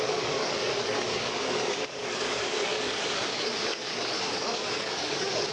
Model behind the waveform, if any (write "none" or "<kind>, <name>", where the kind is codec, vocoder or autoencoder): codec, DAC